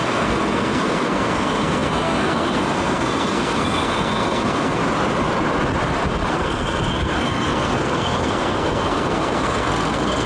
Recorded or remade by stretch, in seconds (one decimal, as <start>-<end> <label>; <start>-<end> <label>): 0.0-4.8 remade; 4.8-6.3 recorded; 6.3-10.3 remade